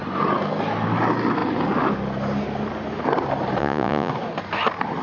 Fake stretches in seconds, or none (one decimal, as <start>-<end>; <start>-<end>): 3.6-4.1